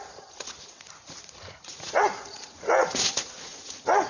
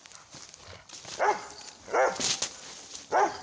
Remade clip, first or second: first